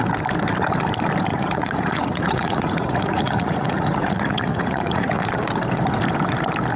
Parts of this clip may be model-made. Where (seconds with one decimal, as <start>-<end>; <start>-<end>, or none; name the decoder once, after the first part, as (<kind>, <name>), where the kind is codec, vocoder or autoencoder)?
1.3-5.2 (vocoder, Vocos)